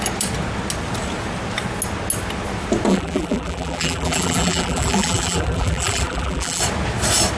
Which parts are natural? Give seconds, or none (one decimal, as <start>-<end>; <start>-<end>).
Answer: 0.0-2.9; 6.6-7.4

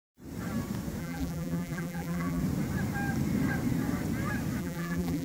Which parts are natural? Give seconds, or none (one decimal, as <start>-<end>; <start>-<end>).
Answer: 0.0-1.0; 2.4-4.6

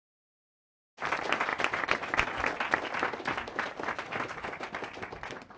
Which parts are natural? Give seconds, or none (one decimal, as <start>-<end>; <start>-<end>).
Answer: 0.0-5.6

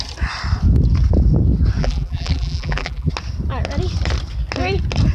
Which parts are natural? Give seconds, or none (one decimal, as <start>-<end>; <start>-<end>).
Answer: 0.0-1.8; 3.1-5.1

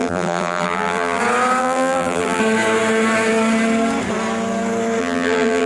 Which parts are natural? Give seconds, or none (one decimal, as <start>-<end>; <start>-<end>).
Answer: 1.2-1.6; 2.4-5.0